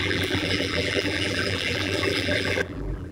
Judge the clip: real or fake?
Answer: fake